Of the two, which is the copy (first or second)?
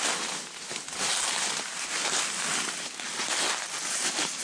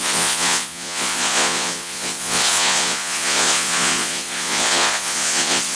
second